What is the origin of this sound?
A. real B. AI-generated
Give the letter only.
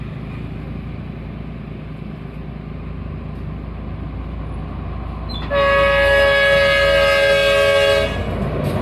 A